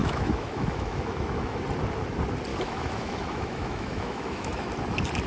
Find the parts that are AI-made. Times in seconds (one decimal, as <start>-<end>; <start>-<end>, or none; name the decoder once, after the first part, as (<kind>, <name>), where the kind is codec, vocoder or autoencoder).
0.0-1.6 (autoencoder, DAC-VAE); 2.5-4.7